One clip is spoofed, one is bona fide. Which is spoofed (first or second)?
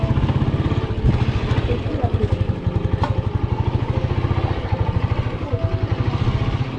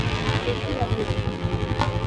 second